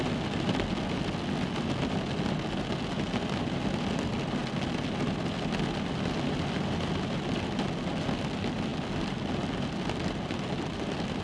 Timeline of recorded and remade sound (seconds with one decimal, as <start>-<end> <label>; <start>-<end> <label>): 0.0-11.2 recorded